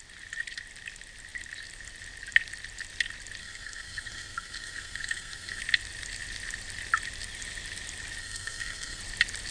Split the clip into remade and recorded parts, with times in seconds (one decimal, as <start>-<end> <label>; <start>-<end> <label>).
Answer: 0.0-3.4 recorded; 3.4-5.6 remade; 5.6-8.2 recorded; 8.2-9.0 remade; 9.0-9.5 recorded